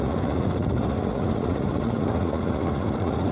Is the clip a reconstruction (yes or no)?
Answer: yes